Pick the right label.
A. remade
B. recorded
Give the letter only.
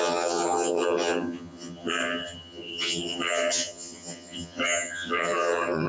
A